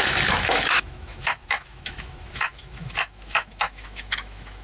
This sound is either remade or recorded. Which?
remade